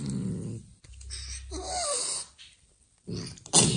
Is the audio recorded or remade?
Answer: recorded